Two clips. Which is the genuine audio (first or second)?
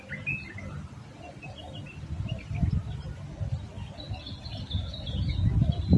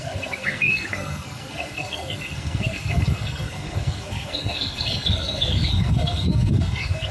first